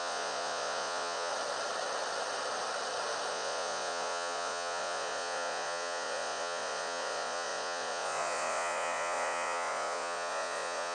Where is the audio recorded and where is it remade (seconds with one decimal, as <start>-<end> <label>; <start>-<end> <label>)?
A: 0.0-1.3 remade; 1.3-3.3 recorded; 3.3-10.9 remade